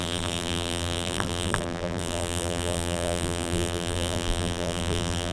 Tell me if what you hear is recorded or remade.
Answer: remade